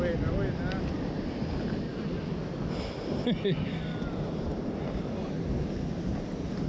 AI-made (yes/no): no